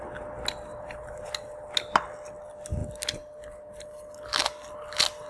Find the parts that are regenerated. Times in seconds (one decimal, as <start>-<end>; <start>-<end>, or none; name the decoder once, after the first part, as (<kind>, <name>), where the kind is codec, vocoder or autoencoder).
0.7-1.3 (vocoder, BigVGAN v2)